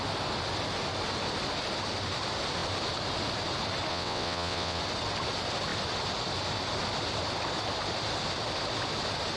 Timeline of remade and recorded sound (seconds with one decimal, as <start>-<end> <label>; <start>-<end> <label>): 0.0-3.9 recorded; 3.9-4.8 remade; 4.8-9.4 recorded